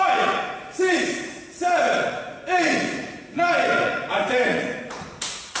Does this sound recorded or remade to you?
remade